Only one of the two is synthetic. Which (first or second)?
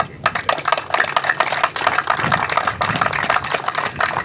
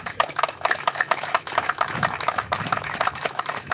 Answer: second